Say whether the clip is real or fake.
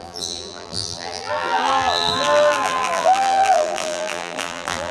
fake